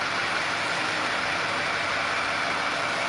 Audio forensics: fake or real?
real